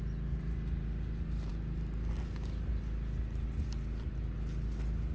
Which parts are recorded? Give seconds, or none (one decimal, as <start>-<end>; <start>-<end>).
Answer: 0.0-5.1